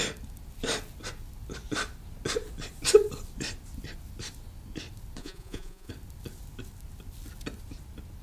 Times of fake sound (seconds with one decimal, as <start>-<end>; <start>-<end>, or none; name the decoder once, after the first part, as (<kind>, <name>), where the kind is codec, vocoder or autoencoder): 5.2-5.9 (vocoder, Vocos)